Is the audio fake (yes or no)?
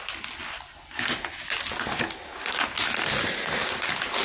no